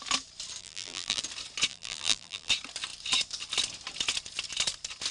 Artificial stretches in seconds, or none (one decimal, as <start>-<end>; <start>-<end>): 0.6-1.2; 1.7-2.5